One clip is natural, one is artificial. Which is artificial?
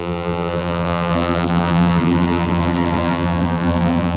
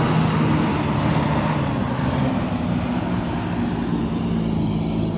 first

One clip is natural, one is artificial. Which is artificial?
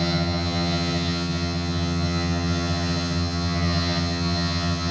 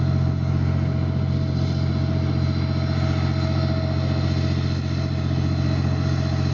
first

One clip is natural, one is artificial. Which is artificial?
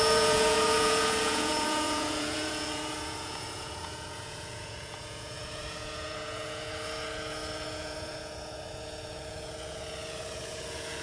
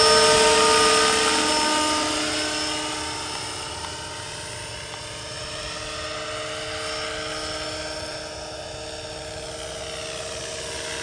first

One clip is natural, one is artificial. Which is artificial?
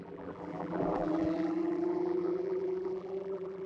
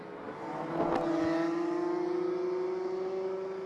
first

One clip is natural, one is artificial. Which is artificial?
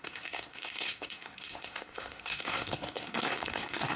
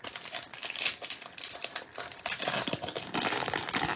first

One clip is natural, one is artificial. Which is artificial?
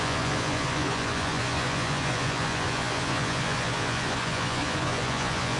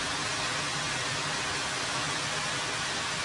first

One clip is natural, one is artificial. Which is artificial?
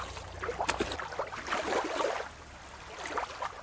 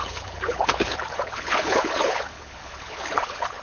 second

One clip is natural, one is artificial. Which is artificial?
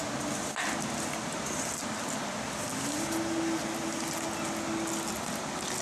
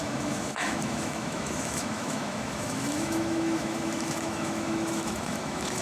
second